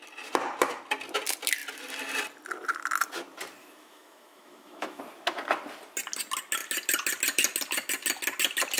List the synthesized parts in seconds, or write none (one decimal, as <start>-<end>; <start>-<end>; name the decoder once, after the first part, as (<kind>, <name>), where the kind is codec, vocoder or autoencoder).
3.6-5.0 (autoencoder, DAC-VAE)